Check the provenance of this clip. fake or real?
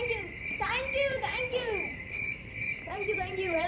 fake